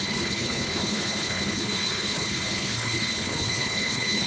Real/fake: fake